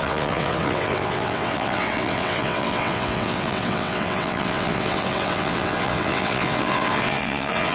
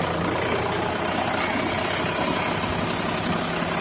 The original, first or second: second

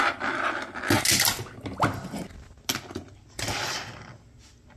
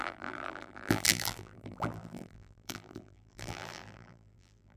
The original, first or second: first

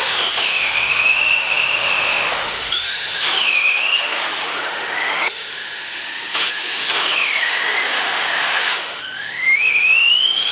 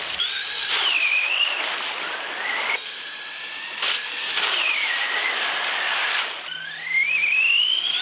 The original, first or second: second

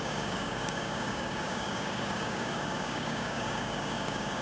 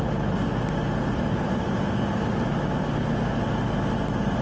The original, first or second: second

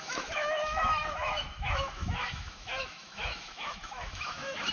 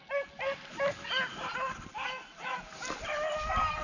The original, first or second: second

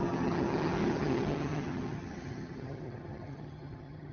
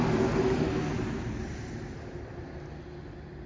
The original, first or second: second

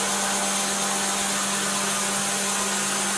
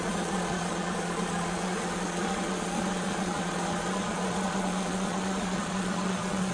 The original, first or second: first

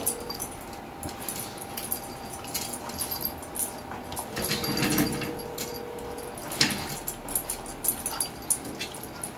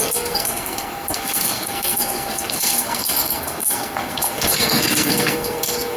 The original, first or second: first